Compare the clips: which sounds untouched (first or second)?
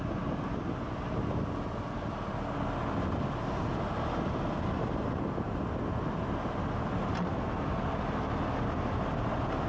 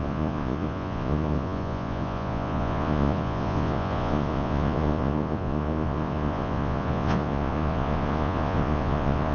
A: first